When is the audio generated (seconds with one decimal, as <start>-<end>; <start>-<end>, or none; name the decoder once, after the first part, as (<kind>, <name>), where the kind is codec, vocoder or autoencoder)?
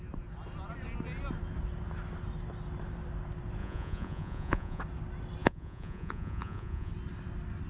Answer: 3.6-4.8 (vocoder, Vocos); 5.4-6.9